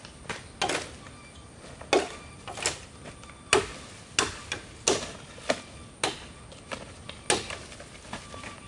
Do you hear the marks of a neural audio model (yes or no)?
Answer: no